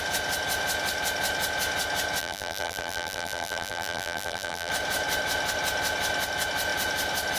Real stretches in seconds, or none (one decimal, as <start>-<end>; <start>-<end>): 0.0-2.2; 4.7-7.4